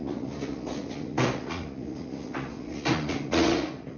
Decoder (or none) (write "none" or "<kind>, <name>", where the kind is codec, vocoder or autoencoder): vocoder, Vocos